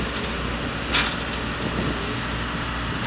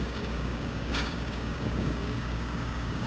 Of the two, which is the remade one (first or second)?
second